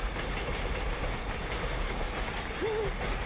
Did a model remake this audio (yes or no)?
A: no